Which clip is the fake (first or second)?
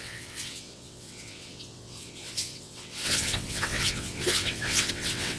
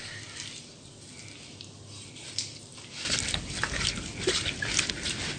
first